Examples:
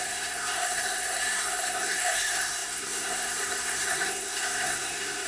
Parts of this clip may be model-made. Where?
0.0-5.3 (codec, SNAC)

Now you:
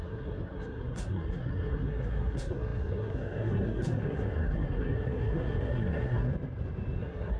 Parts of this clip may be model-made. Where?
0.0-6.3 (codec, SNAC); 7.0-7.4

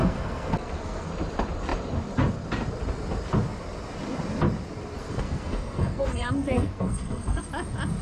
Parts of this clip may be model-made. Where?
0.0-1.1 (codec, SNAC); 5.0-7.5

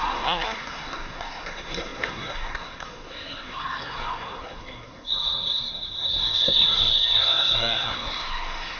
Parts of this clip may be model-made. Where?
0.0-8.8 (codec, SNAC)

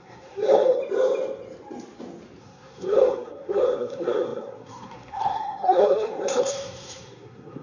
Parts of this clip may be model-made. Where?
0.0-0.8 (codec, SNAC); 2.4-7.6

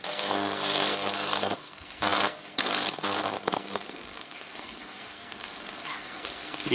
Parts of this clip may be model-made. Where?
0.0-6.7 (codec, SNAC)

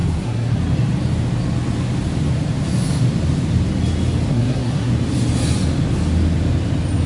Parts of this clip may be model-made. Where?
0.0-0.6 (codec, SNAC); 4.3-4.9

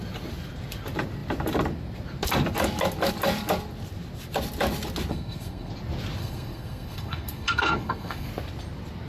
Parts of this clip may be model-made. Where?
5.1-5.7 (codec, SNAC); 6.2-8.3